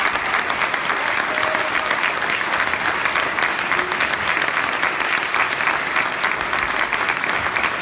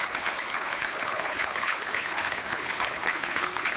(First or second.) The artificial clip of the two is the second